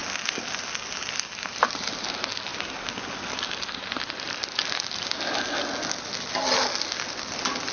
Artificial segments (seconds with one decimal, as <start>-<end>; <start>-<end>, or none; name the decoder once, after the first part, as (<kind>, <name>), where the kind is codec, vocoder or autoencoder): none